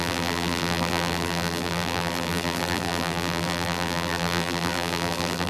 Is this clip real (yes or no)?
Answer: no